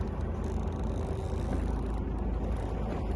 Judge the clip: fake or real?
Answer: real